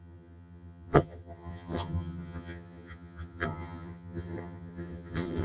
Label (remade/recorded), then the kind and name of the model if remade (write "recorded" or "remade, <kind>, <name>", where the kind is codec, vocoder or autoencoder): remade, vocoder, HiFi-GAN